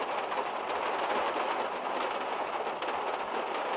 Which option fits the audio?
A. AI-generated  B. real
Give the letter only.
B